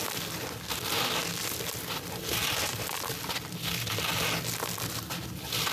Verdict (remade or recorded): recorded